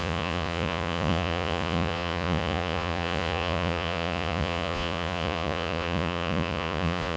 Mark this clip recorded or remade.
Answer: remade